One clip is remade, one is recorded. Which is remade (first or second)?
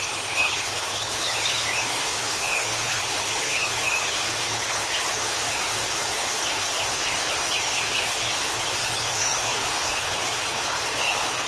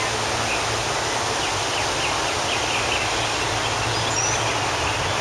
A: first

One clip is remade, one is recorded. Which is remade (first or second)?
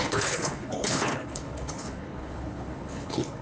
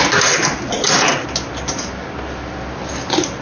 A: first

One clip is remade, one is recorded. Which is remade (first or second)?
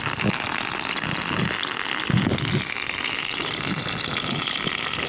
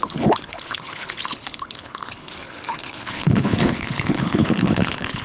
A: second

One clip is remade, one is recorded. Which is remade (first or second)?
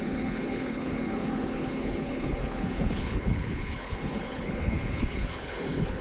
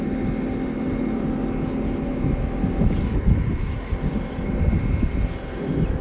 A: first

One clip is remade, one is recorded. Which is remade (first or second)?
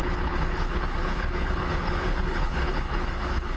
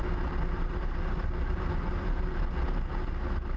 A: first